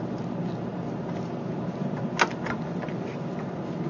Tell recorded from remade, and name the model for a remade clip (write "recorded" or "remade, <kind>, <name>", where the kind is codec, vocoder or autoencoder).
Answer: recorded